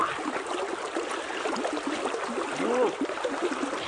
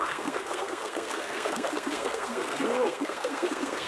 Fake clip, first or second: second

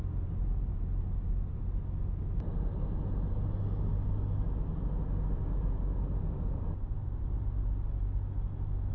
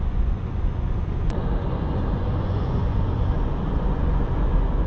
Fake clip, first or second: second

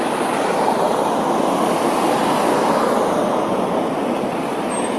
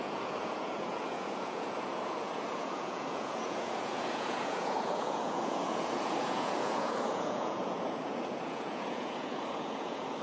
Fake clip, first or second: second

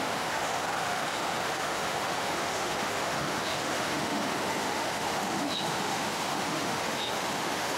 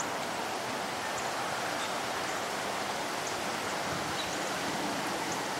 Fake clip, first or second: first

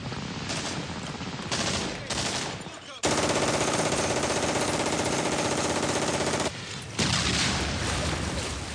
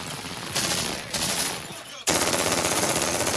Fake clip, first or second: second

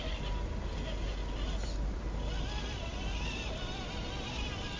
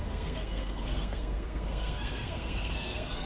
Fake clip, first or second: second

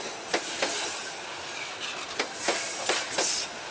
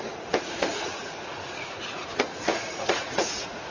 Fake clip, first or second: second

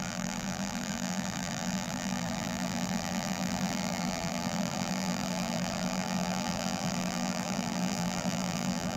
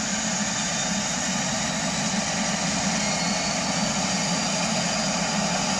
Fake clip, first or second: first